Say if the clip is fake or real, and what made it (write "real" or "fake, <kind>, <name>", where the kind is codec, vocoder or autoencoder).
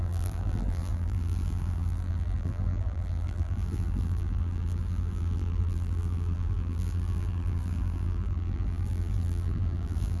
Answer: fake, vocoder, BigVGAN v2